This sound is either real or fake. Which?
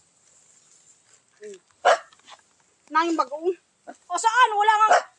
real